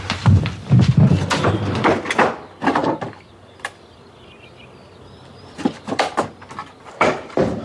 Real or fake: real